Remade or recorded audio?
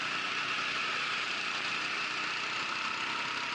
recorded